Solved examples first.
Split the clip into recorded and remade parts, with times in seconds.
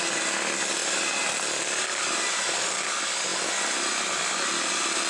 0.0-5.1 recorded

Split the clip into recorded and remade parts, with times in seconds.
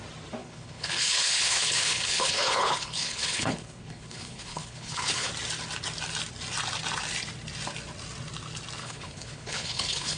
0.0-0.4 recorded; 0.4-5.3 remade; 5.3-8.8 recorded; 8.8-10.2 remade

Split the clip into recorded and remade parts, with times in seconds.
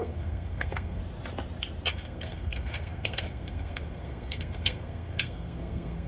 0.0-1.0 remade; 1.0-1.9 recorded; 1.9-6.1 remade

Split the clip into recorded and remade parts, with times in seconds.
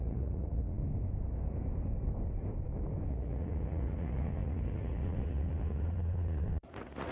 0.0-0.8 remade; 0.8-3.1 recorded; 3.1-7.1 remade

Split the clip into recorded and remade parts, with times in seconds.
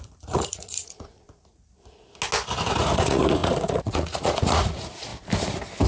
0.0-1.1 remade; 1.1-2.8 recorded; 2.8-5.1 remade; 5.1-5.9 recorded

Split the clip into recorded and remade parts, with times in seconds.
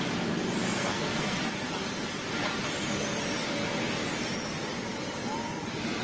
0.0-0.6 recorded; 0.6-1.4 remade; 1.4-6.0 recorded